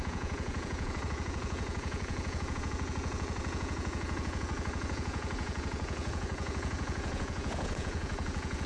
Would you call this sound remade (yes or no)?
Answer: yes